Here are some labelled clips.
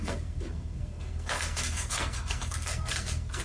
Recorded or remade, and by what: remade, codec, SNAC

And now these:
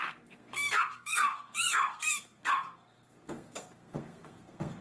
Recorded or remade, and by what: remade, codec, SNAC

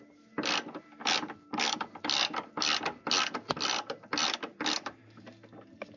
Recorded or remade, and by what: recorded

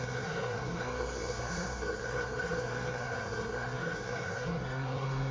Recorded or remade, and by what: remade, codec, SNAC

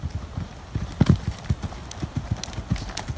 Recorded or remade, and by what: recorded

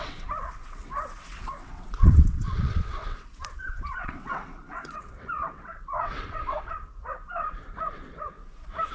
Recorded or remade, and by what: remade, vocoder, WaveNeXt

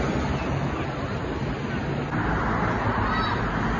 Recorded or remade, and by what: recorded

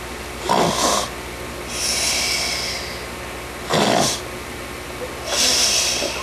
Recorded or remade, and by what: recorded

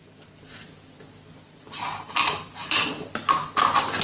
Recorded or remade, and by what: recorded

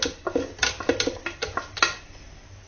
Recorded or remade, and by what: recorded